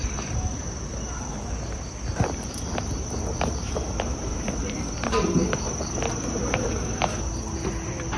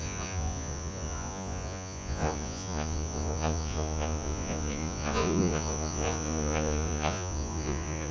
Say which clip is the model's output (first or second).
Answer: second